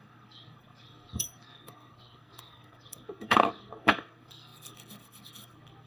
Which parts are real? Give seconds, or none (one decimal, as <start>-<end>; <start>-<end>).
none